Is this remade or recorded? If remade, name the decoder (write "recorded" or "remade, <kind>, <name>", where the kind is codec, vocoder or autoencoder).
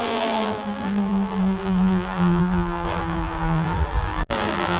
remade, vocoder, BigVGAN v2